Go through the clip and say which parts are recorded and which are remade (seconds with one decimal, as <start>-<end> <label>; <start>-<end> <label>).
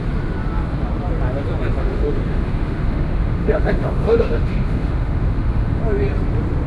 0.0-1.8 recorded; 1.8-5.8 remade; 5.8-6.7 recorded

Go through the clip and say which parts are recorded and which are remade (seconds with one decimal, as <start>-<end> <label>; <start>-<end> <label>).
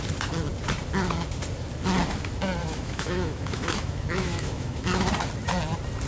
0.0-2.6 recorded; 2.6-5.1 remade; 5.1-6.1 recorded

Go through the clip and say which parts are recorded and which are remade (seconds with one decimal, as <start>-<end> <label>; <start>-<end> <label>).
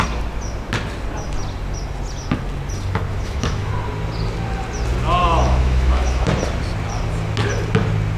0.0-3.1 recorded; 3.1-3.7 remade; 3.7-5.2 recorded; 5.2-6.3 remade; 6.3-8.2 recorded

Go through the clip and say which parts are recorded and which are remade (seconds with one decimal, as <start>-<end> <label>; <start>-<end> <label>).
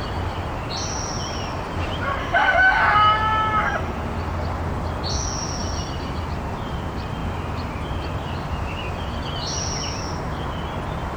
0.0-2.2 recorded; 2.2-2.8 remade; 2.8-11.2 recorded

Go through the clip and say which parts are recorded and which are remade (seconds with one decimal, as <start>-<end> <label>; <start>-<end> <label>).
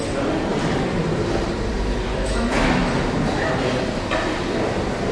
0.0-2.1 recorded; 2.1-2.9 remade; 2.9-5.1 recorded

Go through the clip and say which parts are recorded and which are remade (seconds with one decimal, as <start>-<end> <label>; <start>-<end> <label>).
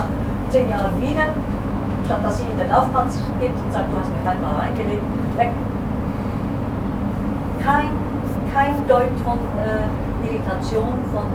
0.0-0.4 recorded; 0.4-3.3 remade; 3.3-11.3 recorded